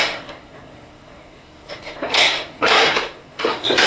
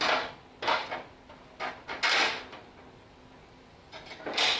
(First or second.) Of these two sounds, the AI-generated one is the first